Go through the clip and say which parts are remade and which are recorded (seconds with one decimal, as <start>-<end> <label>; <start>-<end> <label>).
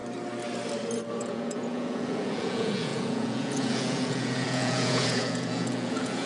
0.0-1.2 recorded; 1.2-6.3 remade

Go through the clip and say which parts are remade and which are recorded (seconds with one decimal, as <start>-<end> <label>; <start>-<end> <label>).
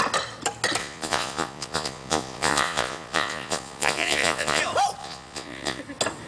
0.0-0.8 recorded; 0.8-4.6 remade; 4.6-5.0 recorded; 5.0-5.8 remade; 5.8-6.3 recorded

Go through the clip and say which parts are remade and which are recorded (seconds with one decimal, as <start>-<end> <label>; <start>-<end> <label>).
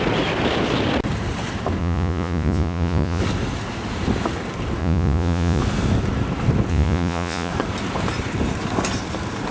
0.0-1.8 recorded; 1.8-3.2 remade; 3.2-4.8 recorded; 4.8-5.6 remade; 5.6-6.7 recorded; 6.7-7.5 remade; 7.5-9.5 recorded